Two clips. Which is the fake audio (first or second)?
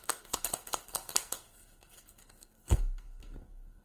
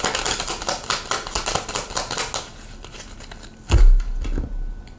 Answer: first